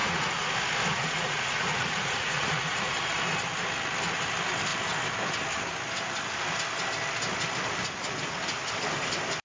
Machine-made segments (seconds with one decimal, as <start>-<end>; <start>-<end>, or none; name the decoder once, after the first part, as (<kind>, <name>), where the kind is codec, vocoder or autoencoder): 0.0-0.5 (vocoder, Vocos); 0.9-3.1